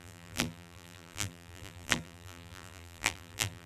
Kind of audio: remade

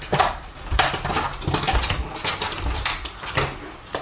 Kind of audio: recorded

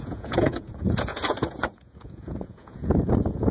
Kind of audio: remade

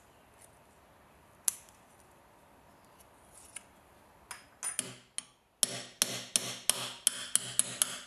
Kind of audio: recorded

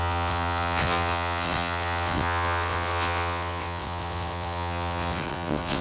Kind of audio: remade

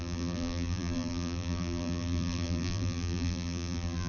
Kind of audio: remade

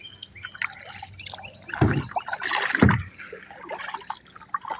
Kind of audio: recorded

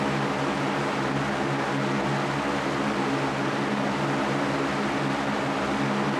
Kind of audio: recorded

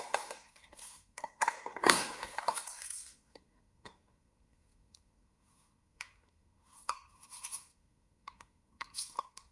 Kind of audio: remade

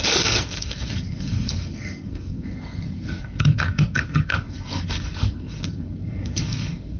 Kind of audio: remade